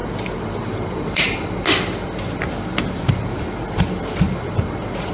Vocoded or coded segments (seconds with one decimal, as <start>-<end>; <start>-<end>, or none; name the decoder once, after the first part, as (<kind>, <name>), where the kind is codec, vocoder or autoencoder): none